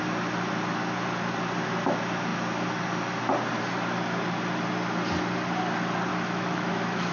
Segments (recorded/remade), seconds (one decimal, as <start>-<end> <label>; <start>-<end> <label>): 0.0-6.1 recorded; 6.1-7.1 remade